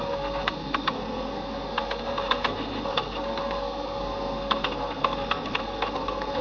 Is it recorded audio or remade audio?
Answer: remade